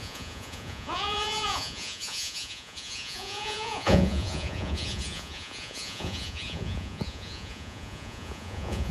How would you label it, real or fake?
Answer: fake